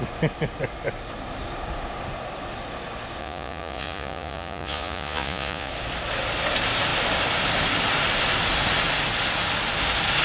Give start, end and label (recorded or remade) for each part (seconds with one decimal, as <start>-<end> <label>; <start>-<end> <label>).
0.0-3.2 recorded; 3.2-5.7 remade; 5.7-10.2 recorded